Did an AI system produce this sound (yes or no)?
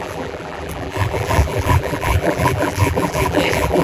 yes